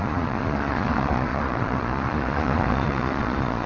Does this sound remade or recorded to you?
remade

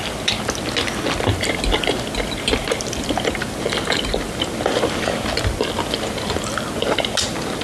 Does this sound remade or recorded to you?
recorded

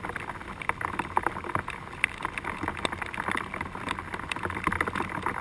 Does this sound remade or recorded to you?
recorded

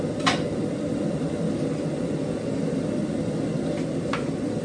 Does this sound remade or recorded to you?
recorded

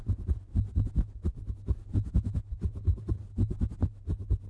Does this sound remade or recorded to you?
recorded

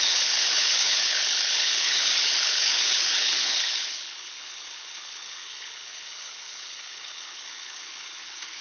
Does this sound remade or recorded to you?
remade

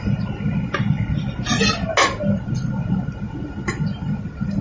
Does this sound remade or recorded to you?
recorded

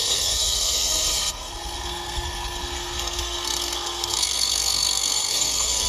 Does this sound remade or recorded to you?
remade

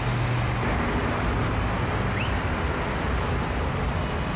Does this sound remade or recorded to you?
recorded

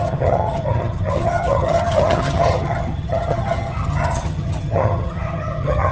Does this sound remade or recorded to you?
remade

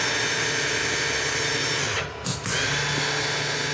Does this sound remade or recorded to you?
recorded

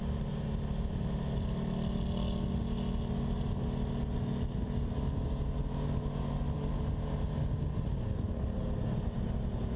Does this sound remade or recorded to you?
recorded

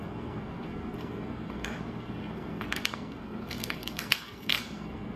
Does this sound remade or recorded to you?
remade